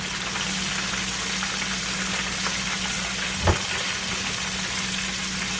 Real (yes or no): yes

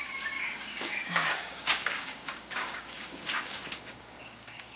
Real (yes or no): no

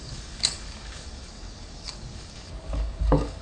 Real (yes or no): no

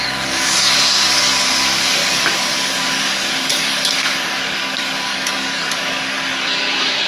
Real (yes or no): no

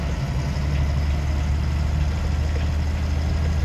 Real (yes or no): yes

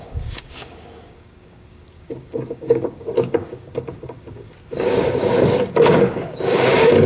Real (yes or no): no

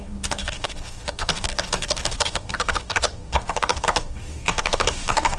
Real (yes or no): no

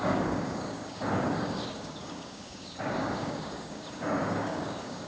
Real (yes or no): no